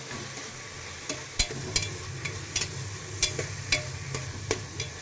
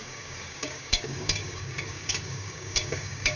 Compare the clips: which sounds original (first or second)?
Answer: first